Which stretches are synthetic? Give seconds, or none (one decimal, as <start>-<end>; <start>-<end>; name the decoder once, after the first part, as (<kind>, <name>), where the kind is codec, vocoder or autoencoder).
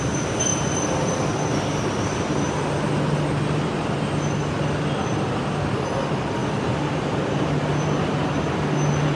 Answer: none